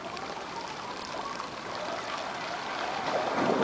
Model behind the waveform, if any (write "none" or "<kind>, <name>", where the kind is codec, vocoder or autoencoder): none